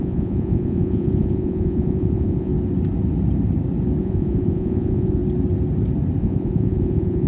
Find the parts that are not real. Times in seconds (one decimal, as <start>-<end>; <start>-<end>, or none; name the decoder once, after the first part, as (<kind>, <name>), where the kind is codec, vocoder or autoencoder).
0.0-2.5 (vocoder, Vocos); 4.0-5.2; 6.2-7.3